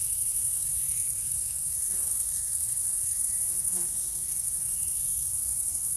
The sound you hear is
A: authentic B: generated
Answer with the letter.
B